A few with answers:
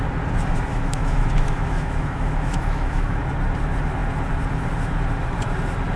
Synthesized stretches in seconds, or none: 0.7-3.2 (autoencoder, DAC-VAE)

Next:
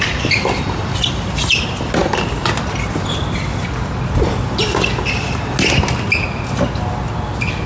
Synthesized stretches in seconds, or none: none

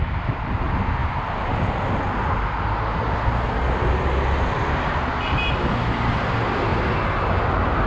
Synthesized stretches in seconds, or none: none

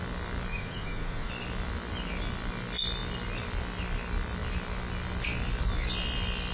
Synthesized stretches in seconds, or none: 0.5-1.3 (vocoder, Vocos)